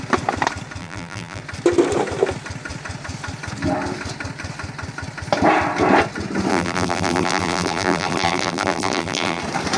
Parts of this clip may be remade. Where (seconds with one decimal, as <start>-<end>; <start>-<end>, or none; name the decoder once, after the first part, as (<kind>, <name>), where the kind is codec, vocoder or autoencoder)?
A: 0.8-1.4 (vocoder, BigVGAN v2); 6.5-9.4